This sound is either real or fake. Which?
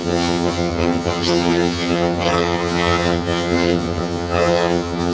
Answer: fake